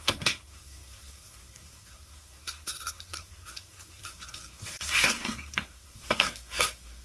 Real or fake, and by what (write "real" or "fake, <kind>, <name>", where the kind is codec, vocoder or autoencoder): fake, codec, SNAC